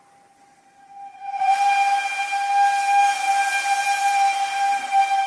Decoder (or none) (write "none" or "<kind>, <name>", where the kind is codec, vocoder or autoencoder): none